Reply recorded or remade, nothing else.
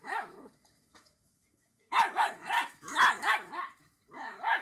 remade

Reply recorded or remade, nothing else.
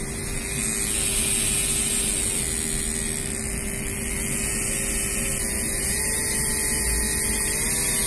recorded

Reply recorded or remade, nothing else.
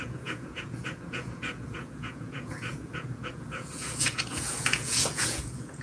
remade